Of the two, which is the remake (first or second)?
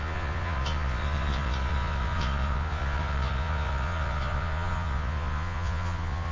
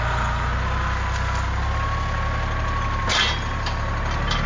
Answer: first